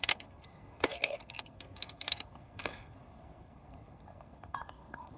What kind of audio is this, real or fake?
fake